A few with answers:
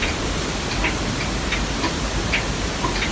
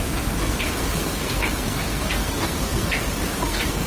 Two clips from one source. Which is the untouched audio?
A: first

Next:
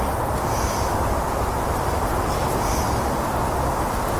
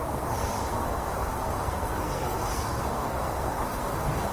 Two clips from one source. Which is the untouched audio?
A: first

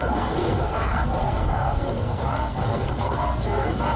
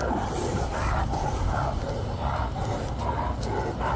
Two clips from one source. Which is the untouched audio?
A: second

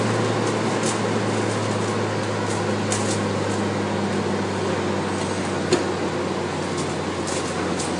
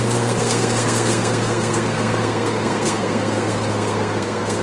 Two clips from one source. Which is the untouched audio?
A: first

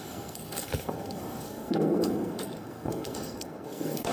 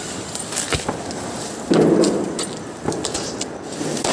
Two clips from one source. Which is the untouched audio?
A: second